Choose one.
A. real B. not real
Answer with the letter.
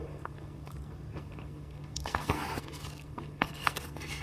B